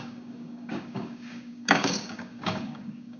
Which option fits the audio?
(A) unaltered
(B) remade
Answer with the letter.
B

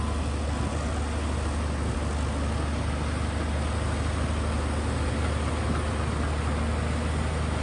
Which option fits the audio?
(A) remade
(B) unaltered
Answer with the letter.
B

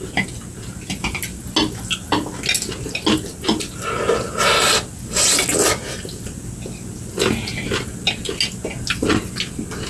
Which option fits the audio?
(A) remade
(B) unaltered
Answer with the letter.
B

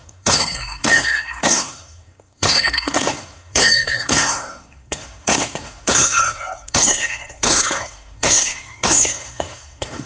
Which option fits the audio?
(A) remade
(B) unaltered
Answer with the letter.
A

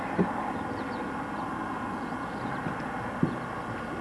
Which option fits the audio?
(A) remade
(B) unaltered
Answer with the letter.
B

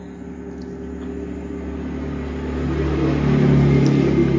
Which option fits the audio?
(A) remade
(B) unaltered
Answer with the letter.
B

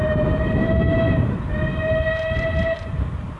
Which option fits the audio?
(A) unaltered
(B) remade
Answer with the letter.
A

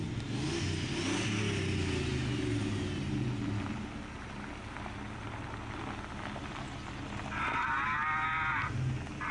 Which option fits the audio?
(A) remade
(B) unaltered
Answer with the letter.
B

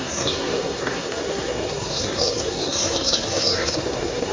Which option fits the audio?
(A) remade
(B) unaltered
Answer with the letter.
A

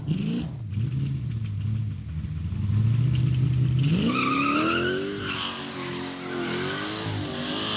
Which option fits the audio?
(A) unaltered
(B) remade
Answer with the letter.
A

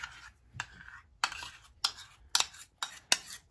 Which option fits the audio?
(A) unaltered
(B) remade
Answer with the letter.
A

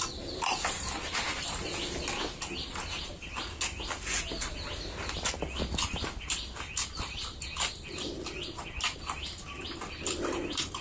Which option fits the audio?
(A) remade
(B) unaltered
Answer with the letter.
B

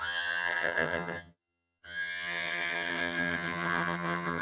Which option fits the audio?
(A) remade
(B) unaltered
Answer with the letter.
A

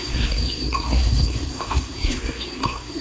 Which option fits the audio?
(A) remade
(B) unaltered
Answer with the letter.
A